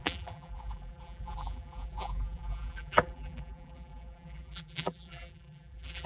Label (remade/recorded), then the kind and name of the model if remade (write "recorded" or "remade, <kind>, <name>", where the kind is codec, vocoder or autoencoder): remade, vocoder, BigVGAN v2